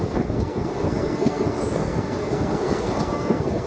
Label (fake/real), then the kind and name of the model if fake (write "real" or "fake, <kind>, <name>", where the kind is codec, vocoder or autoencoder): fake, codec, SNAC